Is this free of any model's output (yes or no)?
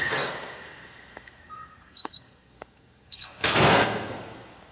no